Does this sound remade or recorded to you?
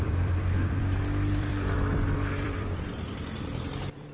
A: remade